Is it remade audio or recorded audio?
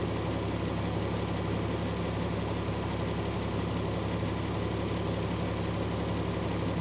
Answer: recorded